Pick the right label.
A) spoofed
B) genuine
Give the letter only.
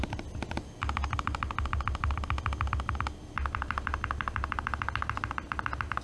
B